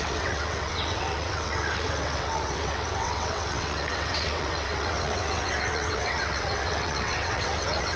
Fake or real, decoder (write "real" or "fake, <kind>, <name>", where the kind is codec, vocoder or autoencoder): fake, vocoder, WaveNeXt